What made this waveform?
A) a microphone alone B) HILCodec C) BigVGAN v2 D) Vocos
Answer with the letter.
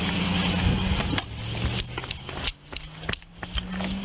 A